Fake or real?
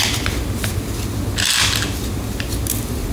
real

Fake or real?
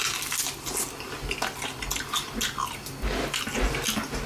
real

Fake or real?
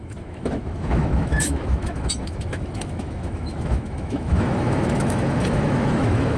fake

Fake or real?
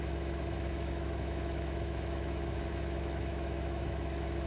fake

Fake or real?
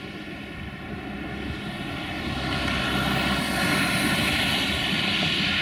real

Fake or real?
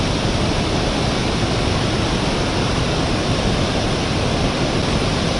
real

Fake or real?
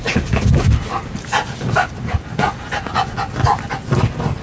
real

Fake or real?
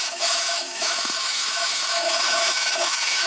fake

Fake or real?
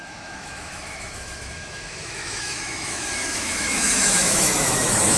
fake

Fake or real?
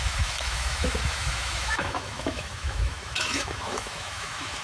fake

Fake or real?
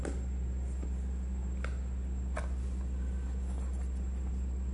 real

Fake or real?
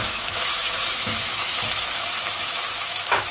fake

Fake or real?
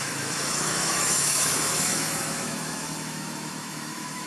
fake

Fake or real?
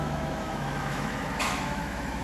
fake